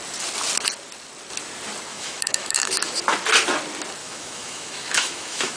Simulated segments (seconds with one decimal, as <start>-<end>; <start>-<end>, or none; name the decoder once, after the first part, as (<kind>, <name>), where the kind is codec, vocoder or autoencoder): 1.9-2.7 (autoencoder, DAC-VAE); 4.0-5.6